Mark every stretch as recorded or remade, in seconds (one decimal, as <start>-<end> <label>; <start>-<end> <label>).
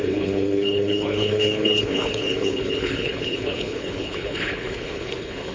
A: 0.0-5.5 remade